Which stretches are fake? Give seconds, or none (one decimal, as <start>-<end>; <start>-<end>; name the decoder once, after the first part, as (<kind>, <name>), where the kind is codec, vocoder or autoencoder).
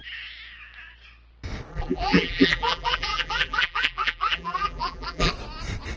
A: 1.7-5.3 (vocoder, BigVGAN v2)